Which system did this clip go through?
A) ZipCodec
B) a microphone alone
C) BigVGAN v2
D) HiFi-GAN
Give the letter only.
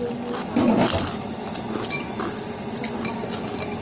B